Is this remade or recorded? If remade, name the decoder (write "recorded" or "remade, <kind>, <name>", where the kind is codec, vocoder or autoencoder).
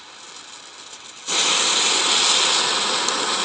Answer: recorded